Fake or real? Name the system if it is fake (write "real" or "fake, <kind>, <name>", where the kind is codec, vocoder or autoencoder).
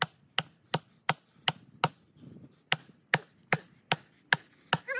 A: real